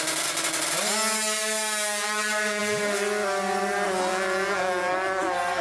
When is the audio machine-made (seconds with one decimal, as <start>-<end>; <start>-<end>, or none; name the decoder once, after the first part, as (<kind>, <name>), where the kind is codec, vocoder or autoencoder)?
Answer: 4.1-4.9 (vocoder, Vocos)